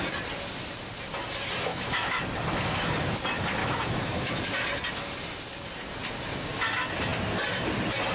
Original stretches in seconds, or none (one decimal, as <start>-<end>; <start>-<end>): 0.0-1.7; 2.2-3.6; 4.4-8.1